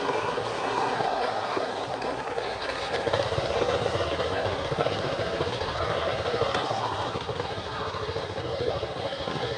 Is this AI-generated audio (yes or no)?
yes